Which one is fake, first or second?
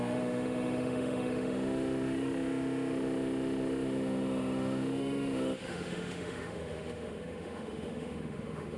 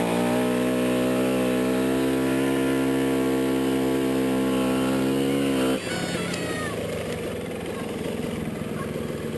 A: first